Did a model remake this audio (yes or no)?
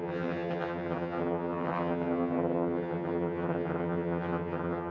yes